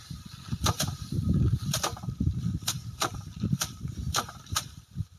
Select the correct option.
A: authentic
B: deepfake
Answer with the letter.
B